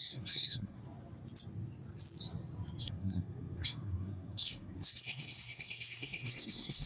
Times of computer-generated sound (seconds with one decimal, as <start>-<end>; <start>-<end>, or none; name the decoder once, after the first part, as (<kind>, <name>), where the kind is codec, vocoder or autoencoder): 0.0-0.8 (codec, SNAC); 2.8-6.9